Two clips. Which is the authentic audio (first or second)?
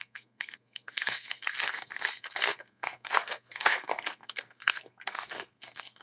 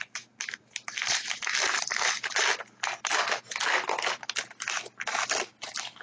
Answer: second